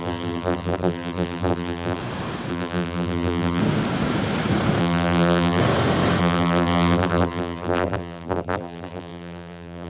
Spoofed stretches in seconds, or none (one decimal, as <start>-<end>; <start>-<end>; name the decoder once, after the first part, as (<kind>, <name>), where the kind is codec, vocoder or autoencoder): 0.0-2.0 (vocoder, BigVGAN v2); 2.5-3.6; 4.8-5.6; 6.2-9.9